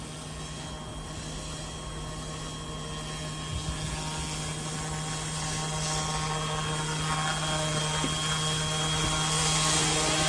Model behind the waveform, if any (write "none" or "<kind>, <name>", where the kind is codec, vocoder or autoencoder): none